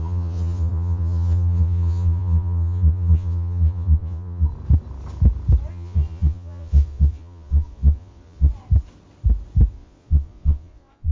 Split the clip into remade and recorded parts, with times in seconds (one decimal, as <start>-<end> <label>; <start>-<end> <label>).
0.0-4.5 remade; 4.5-5.7 recorded; 5.7-8.5 remade; 8.5-9.7 recorded; 9.7-11.1 remade

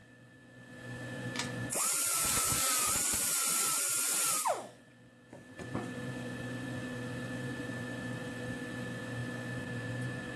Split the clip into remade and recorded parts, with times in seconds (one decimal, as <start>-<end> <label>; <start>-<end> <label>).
0.0-10.4 remade